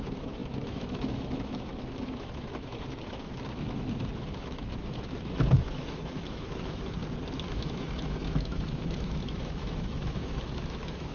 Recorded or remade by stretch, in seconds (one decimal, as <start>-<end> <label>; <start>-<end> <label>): 0.0-7.0 remade; 7.0-7.5 recorded; 7.5-11.1 remade